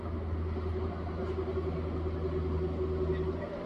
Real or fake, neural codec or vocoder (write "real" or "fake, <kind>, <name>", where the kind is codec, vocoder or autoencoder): real